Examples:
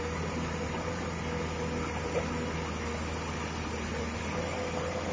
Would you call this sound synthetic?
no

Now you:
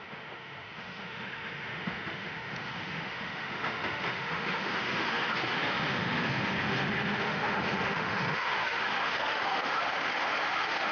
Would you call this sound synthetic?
yes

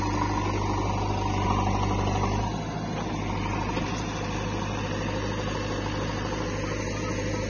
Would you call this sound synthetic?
no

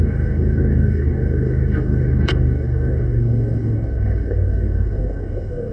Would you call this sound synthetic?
yes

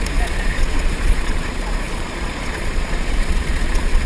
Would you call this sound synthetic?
yes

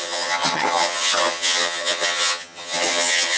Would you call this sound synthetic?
yes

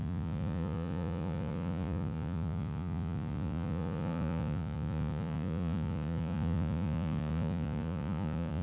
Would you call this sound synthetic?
yes